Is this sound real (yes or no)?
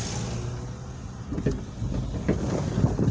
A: yes